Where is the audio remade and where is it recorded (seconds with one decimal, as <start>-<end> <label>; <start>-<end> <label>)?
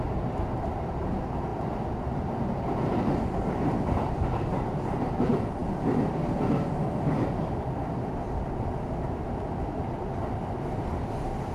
0.0-11.5 recorded